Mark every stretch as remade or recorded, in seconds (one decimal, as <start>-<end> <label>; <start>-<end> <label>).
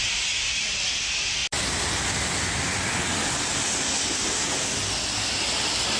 0.0-6.0 recorded